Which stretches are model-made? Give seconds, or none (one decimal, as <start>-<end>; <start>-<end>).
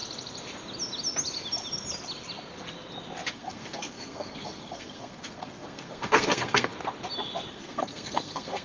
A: 3.3-6.7; 7.5-8.6